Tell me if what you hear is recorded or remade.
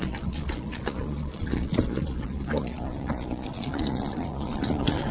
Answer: remade